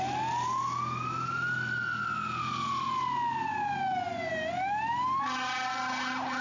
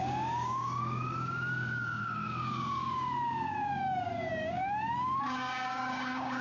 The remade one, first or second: second